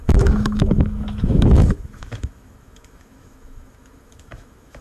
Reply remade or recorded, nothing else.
remade